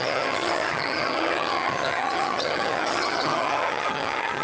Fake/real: fake